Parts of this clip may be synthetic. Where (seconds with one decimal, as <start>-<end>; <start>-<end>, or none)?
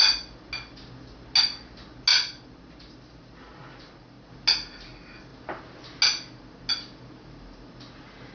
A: none